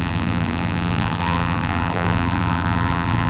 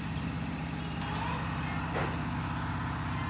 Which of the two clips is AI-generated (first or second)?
first